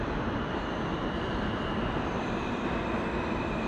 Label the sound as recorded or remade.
remade